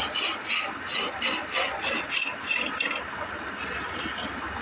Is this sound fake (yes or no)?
no